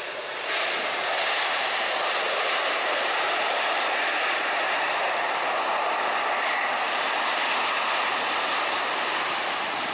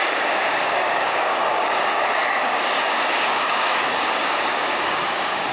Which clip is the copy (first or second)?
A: second